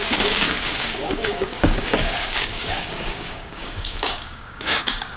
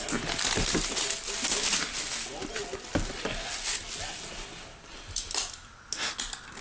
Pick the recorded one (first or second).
second